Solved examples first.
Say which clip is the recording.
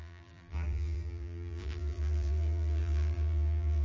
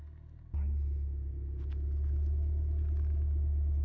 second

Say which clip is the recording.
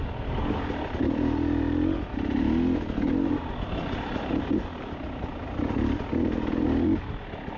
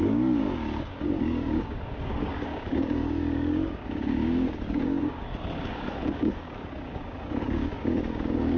first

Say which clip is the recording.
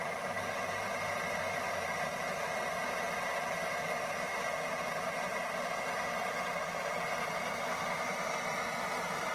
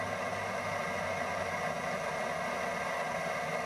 second